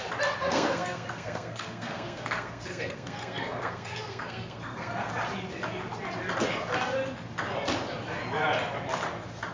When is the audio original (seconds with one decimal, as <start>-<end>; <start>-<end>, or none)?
0.0-0.4; 5.1-9.5